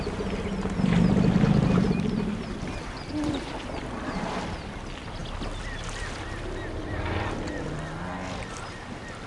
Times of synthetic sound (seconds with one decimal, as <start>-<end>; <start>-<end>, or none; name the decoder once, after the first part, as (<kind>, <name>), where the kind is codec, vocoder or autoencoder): none